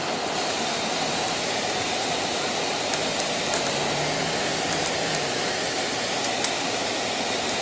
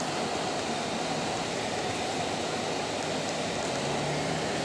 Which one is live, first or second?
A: second